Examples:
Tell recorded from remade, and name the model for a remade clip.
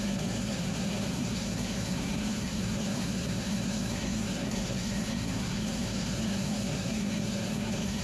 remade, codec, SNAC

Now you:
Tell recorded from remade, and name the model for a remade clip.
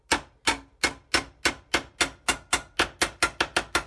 recorded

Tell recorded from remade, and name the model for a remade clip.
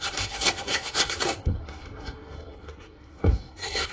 remade, codec, SNAC